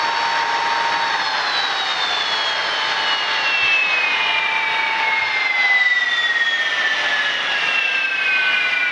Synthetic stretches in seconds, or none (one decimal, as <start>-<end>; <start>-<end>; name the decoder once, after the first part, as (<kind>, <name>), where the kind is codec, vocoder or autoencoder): none